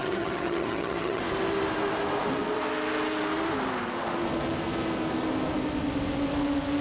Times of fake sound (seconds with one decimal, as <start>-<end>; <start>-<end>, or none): 0.0-1.2